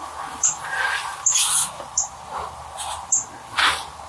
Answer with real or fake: real